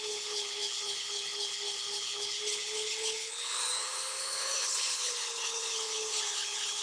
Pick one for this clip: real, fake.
fake